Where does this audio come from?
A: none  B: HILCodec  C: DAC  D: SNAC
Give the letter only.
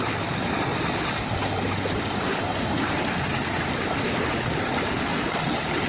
A